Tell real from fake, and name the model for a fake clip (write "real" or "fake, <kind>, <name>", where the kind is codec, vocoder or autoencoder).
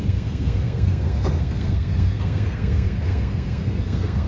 fake, codec, SNAC